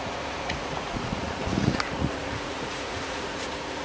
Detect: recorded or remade remade